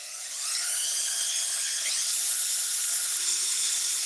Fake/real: fake